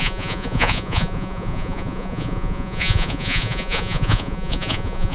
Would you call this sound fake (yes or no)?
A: yes